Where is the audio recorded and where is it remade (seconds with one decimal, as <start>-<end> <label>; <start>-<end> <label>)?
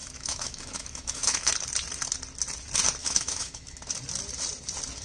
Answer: 0.0-1.5 remade; 1.5-3.0 recorded; 3.0-3.8 remade; 3.8-5.0 recorded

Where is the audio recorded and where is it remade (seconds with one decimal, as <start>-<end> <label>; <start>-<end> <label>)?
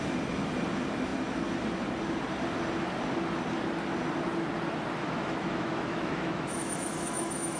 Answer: 0.0-5.0 recorded; 5.0-7.6 remade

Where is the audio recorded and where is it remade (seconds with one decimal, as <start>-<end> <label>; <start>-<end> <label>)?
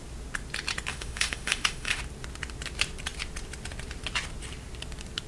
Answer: 0.0-0.9 recorded; 0.9-2.0 remade; 2.0-5.3 recorded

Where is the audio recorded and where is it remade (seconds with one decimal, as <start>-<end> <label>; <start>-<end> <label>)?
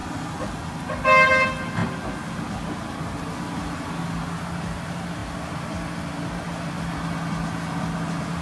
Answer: 0.0-8.4 recorded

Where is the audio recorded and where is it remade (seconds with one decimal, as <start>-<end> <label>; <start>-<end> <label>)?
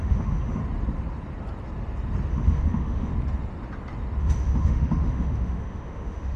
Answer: 0.0-0.6 remade; 0.6-2.3 recorded; 2.3-3.1 remade; 3.1-4.2 recorded; 4.2-6.4 remade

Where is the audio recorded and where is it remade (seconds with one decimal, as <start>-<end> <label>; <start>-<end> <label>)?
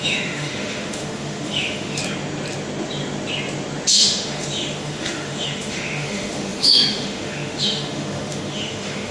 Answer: 0.0-2.0 remade; 2.0-3.9 recorded; 3.9-9.1 remade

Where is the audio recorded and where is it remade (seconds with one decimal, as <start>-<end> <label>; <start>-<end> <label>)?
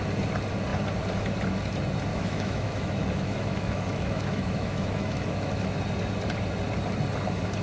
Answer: 0.0-2.1 recorded; 2.1-5.8 remade; 5.8-7.6 recorded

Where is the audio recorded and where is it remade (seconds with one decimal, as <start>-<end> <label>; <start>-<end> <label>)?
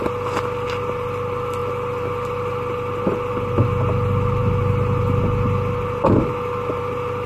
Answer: 0.0-7.3 recorded